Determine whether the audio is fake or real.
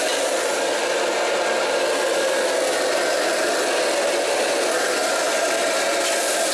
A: real